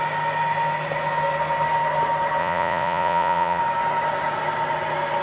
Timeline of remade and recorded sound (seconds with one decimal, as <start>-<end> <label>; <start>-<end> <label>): 0.0-2.4 recorded; 2.4-3.6 remade; 3.6-5.2 recorded